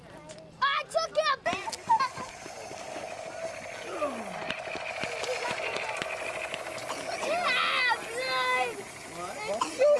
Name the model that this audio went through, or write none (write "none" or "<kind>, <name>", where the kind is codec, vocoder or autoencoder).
none